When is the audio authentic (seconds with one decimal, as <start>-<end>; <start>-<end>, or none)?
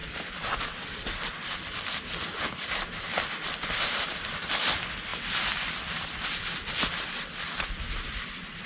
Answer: 0.0-8.7